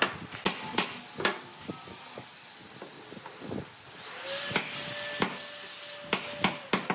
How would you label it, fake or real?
real